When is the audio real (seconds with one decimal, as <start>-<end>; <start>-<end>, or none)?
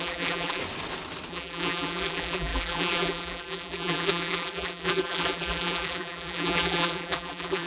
0.6-1.3